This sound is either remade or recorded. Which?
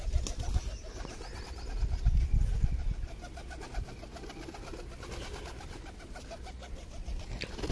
recorded